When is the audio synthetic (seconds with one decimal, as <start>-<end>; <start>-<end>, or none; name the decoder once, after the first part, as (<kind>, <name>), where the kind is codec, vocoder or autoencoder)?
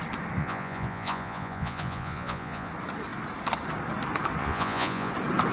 0.4-2.7 (vocoder, Vocos); 4.4-5.1